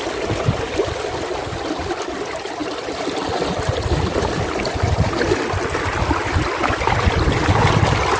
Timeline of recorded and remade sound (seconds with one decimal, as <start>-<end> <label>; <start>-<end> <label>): 0.0-2.6 recorded; 2.6-6.6 remade; 6.6-8.2 recorded